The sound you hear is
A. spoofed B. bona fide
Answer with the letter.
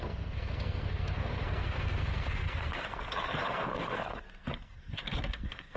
A